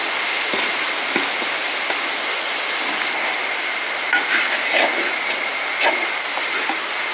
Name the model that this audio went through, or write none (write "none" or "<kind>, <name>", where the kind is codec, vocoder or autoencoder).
none